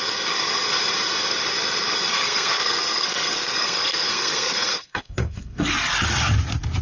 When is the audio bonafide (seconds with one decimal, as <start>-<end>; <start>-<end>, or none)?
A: 0.0-2.1; 5.7-6.8